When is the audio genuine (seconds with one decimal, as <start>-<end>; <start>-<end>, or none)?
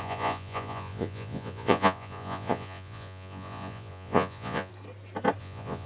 4.7-5.4